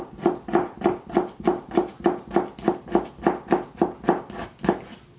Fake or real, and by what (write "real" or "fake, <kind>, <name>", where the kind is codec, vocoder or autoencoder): real